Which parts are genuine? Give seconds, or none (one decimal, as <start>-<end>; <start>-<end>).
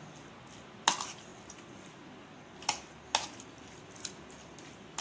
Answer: 0.0-5.0